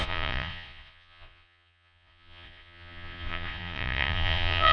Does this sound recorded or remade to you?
remade